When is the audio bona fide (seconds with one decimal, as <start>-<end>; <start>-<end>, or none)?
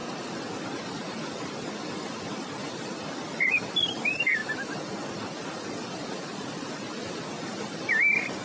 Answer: 0.0-0.6; 4.4-7.0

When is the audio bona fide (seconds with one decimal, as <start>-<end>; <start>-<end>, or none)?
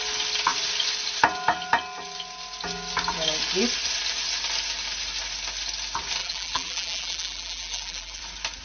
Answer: 0.0-6.2; 8.2-8.6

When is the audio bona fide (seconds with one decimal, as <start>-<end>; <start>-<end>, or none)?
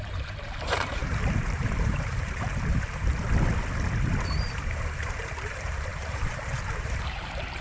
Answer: 3.1-4.1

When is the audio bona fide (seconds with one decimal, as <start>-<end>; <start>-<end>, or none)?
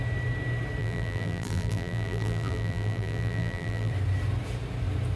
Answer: 0.0-0.8; 3.9-5.2